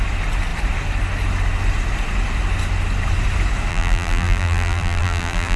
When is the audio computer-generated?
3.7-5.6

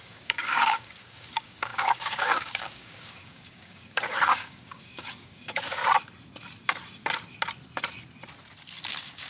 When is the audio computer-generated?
0.0-5.8; 8.9-9.3

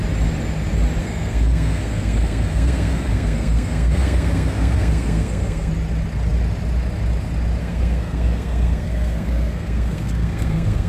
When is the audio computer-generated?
1.0-5.7; 7.6-10.9

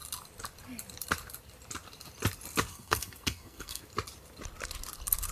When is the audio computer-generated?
2.7-3.8